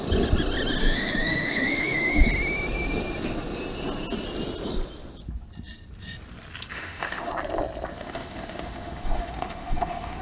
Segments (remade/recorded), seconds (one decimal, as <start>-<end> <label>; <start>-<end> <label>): 0.0-0.8 recorded; 0.8-2.3 remade; 2.3-6.7 recorded; 6.7-7.3 remade; 7.3-7.9 recorded; 7.9-10.2 remade